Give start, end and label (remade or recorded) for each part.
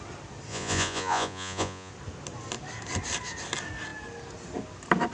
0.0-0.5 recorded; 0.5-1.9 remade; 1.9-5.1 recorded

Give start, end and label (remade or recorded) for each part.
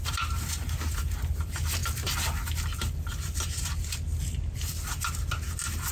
0.0-5.9 recorded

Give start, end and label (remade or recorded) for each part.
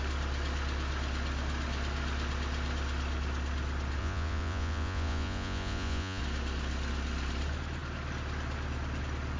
0.0-4.0 recorded; 4.0-6.2 remade; 6.2-9.4 recorded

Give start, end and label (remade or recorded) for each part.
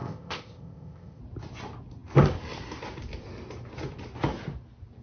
0.0-1.2 remade; 1.2-5.0 recorded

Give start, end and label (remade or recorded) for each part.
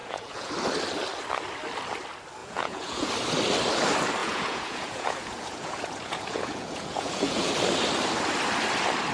0.0-0.5 remade; 0.5-2.4 recorded; 2.4-3.1 remade; 3.1-4.2 recorded; 4.2-7.5 remade; 7.5-9.1 recorded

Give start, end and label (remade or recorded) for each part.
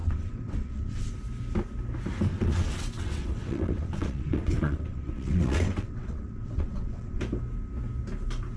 0.0-1.1 remade; 1.1-2.3 recorded; 2.3-7.2 remade; 7.2-8.6 recorded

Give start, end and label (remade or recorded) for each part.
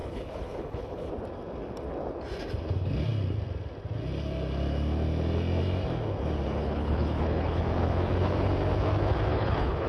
0.0-1.1 remade; 1.1-6.6 recorded; 6.6-7.6 remade; 7.6-9.3 recorded; 9.3-9.9 remade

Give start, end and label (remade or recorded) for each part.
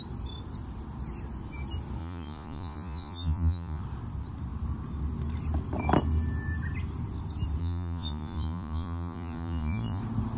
0.0-2.0 recorded; 2.0-3.8 remade; 3.8-7.6 recorded; 7.6-10.0 remade; 10.0-10.4 recorded